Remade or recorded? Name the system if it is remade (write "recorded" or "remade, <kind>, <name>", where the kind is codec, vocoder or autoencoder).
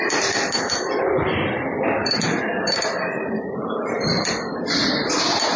remade, vocoder, BigVGAN v2